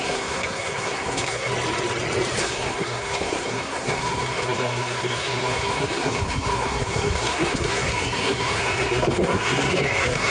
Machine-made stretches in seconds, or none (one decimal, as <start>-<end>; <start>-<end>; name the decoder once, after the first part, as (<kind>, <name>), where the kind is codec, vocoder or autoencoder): 0.0-1.5 (codec, SNAC); 2.4-10.3